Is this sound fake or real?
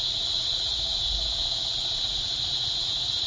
fake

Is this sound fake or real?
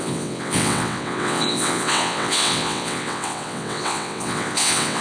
fake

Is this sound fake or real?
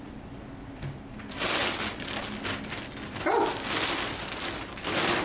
real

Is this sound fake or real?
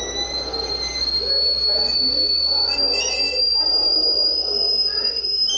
real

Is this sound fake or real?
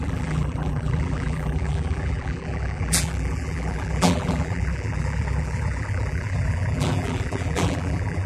fake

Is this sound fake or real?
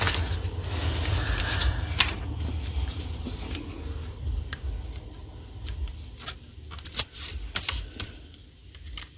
real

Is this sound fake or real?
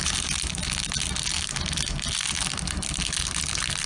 real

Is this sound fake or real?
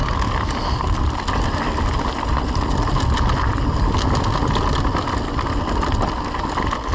real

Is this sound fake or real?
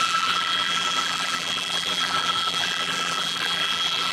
fake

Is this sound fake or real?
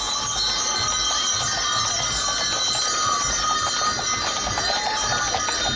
real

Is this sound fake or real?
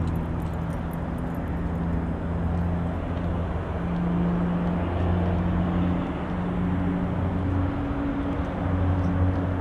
real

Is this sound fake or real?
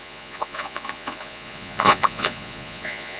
fake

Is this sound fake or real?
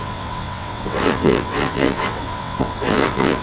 fake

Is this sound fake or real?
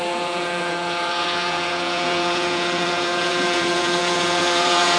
fake